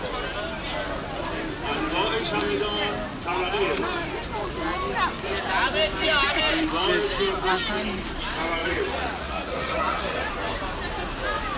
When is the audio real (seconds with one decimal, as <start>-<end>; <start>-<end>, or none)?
0.0-8.6; 10.3-11.6